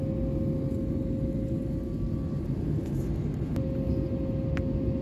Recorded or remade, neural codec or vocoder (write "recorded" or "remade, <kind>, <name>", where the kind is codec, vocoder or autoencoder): recorded